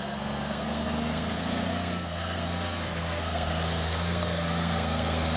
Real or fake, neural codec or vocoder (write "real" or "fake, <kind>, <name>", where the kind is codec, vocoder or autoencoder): fake, codec, SNAC